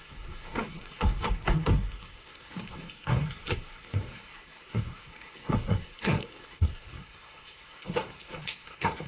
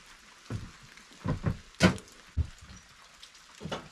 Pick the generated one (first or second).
first